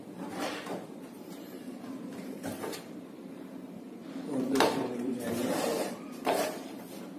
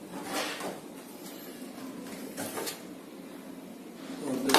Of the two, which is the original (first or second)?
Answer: second